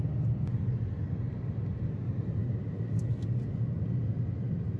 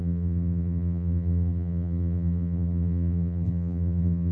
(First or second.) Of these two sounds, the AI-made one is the second